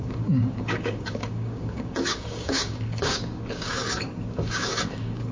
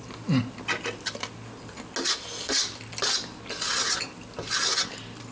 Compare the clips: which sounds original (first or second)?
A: second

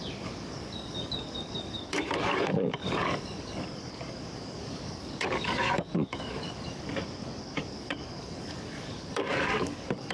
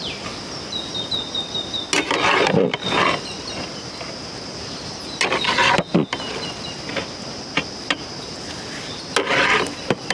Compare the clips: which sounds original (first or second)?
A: second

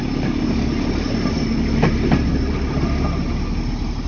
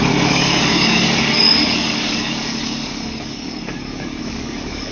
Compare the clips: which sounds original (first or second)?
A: first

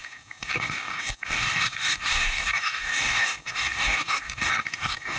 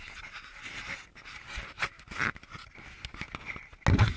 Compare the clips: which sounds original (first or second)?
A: second